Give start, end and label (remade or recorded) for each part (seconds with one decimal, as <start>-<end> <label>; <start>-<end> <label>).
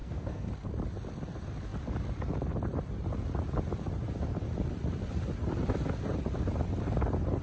0.0-0.7 remade; 0.7-7.4 recorded